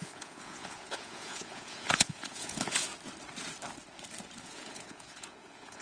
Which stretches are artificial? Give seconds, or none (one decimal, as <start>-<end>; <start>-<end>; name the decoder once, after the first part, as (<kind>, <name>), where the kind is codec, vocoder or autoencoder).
0.0-2.9 (vocoder, Vocos); 4.4-5.8